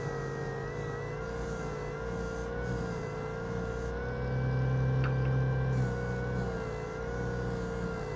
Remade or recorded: recorded